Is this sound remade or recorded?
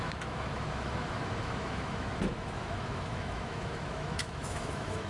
remade